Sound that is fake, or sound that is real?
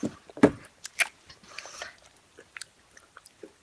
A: real